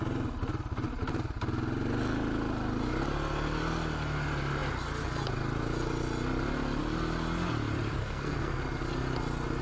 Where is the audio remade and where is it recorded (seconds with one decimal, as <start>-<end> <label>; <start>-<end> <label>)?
0.0-8.0 recorded; 8.0-8.6 remade; 8.6-9.6 recorded

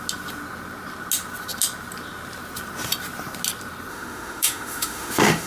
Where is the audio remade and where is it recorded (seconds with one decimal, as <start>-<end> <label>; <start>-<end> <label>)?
0.0-3.9 recorded; 3.9-5.5 remade

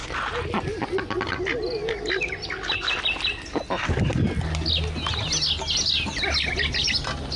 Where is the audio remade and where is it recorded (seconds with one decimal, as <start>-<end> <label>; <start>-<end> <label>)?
0.0-7.4 recorded

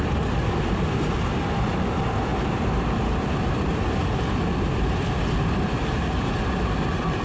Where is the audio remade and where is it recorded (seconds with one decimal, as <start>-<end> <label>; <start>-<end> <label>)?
0.0-7.2 recorded

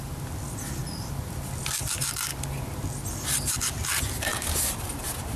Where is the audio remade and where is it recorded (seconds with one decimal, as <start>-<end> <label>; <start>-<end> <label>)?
0.0-5.4 recorded